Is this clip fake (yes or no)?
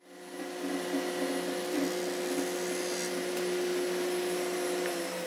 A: no